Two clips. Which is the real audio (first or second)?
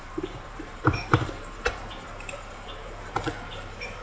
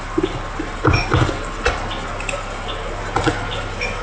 second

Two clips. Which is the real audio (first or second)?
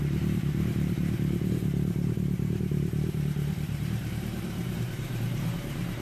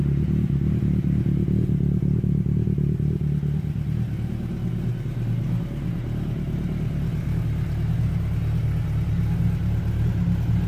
second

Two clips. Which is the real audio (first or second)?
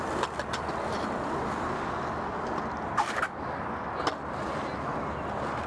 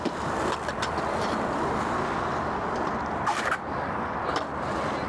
first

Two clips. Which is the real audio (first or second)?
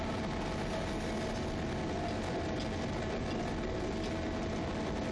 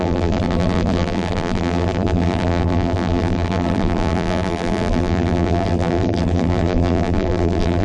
first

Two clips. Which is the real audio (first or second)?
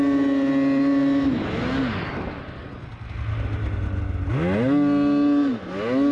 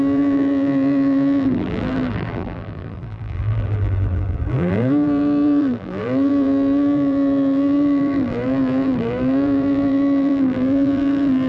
first